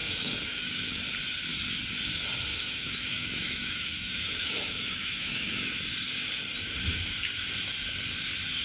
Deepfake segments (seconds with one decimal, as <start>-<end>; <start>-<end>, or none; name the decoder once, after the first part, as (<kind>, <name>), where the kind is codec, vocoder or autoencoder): 0.0-1.0 (autoencoder, DAC-VAE); 2.5-5.8